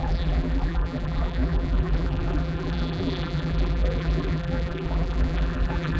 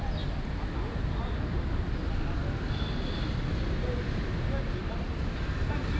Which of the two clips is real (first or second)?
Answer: second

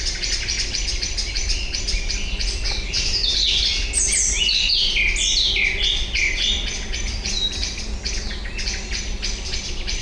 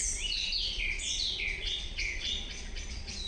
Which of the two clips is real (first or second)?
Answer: first